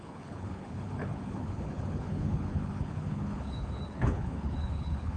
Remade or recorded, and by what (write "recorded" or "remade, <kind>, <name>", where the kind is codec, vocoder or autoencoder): remade, codec, HILCodec